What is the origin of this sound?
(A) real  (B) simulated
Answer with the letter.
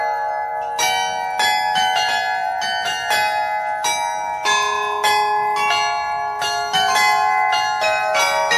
A